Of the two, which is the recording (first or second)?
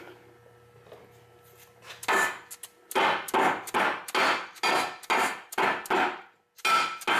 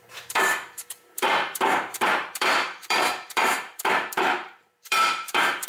first